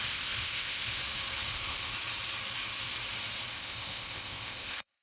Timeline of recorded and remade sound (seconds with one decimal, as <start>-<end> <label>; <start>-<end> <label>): 0.0-1.0 remade; 1.0-1.5 recorded; 1.5-1.9 remade; 1.9-3.5 recorded; 3.5-5.0 remade